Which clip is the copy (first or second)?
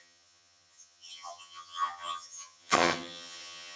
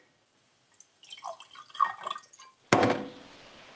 first